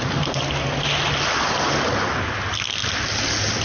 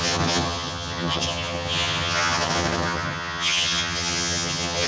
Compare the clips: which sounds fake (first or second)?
second